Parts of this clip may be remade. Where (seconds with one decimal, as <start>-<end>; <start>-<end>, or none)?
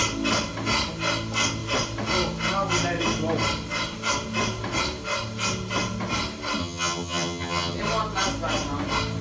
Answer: 6.6-7.8